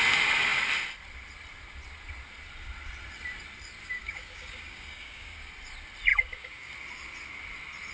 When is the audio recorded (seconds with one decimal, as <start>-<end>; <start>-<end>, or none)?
0.0-3.8; 5.5-6.1; 6.7-7.9